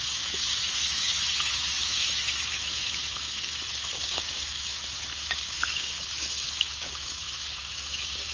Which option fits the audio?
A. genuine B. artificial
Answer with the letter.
B